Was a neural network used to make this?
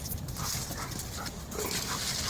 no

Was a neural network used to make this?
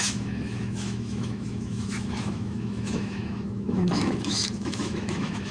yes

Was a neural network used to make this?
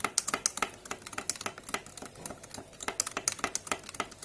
no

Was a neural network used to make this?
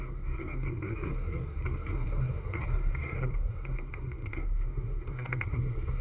yes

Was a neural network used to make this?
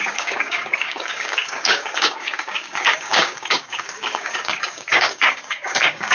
yes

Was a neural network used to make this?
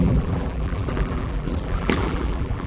yes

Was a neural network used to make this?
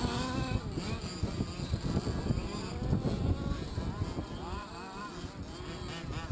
no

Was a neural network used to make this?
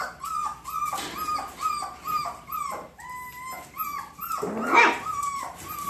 no